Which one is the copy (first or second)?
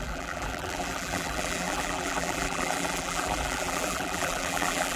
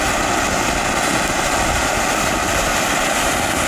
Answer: first